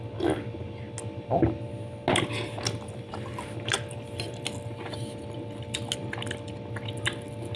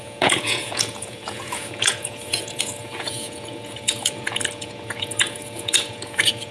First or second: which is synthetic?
second